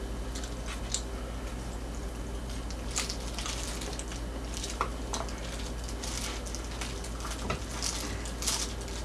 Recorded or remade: recorded